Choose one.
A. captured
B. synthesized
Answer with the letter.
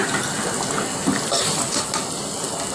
A